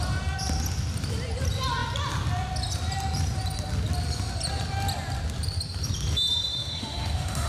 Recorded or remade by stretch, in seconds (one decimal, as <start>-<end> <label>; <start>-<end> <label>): 0.0-6.6 recorded; 6.6-7.5 remade